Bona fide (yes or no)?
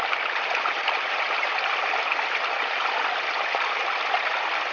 no